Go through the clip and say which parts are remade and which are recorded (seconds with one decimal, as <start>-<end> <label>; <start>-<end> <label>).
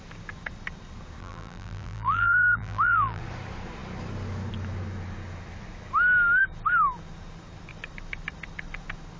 0.0-1.2 recorded; 1.2-3.2 remade; 3.2-9.2 recorded